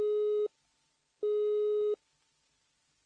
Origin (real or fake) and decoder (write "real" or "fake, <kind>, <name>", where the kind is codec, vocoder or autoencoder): real